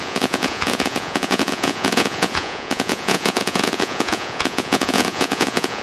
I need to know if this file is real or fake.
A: fake